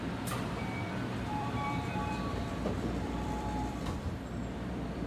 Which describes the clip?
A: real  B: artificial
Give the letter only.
B